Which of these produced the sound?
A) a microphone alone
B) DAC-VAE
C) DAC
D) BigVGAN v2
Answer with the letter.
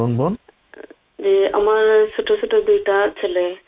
B